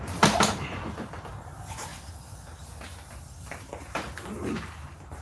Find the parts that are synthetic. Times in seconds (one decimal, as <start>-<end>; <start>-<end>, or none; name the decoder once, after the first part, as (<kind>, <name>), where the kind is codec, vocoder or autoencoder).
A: 0.0-1.9 (vocoder, BigVGAN v2); 3.1-5.2